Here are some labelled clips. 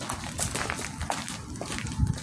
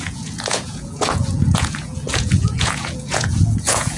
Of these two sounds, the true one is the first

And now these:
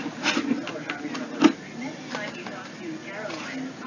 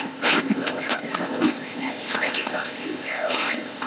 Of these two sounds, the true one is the first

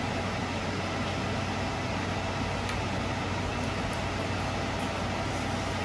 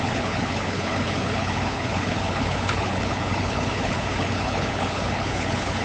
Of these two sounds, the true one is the first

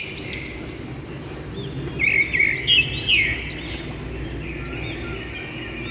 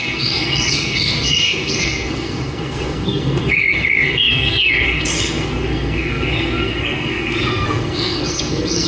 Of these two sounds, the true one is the first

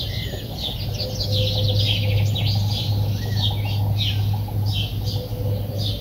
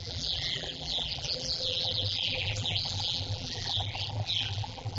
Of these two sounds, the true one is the first